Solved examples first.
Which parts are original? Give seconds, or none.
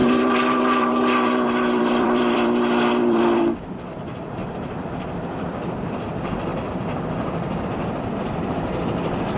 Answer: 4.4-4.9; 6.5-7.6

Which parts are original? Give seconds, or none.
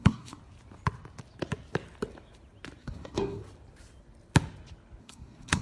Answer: 0.4-2.8; 3.4-5.0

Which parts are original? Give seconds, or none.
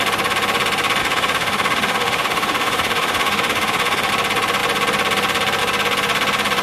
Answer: 0.0-1.0; 4.1-6.6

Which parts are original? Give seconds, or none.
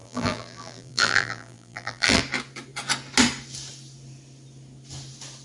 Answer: 2.2-5.4